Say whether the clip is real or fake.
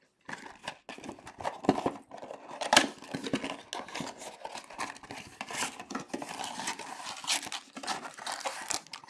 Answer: real